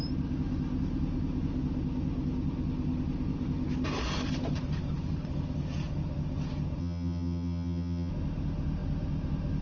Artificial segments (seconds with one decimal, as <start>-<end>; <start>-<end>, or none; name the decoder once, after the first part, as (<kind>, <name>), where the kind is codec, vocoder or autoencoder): 6.8-8.1 (vocoder, HiFi-GAN)